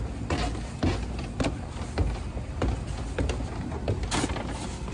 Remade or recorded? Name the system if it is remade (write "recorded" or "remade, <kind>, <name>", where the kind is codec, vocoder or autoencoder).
recorded